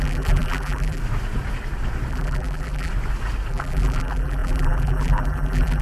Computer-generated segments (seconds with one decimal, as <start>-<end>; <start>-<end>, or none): 0.0-1.0; 2.1-2.9; 3.5-5.8